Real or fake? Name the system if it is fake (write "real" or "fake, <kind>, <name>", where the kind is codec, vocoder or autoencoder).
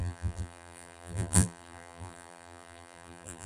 fake, vocoder, BigVGAN v2